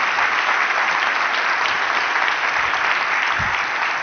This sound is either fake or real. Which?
real